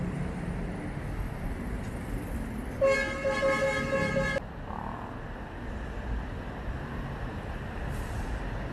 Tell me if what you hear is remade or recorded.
recorded